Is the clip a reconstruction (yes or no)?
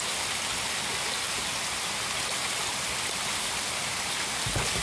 no